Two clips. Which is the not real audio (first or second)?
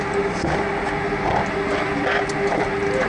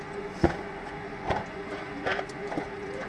second